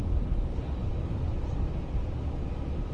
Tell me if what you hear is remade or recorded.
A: remade